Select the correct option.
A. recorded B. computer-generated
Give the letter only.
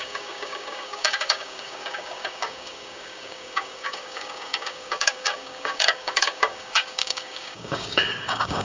B